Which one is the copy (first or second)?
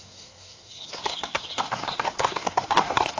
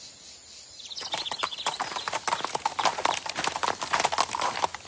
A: first